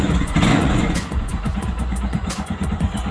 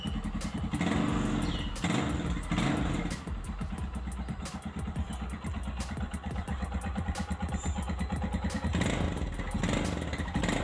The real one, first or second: second